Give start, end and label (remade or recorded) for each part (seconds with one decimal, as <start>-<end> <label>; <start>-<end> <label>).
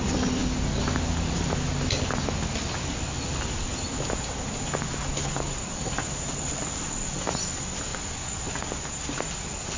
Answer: 0.0-7.9 recorded; 7.9-8.5 remade; 8.5-9.8 recorded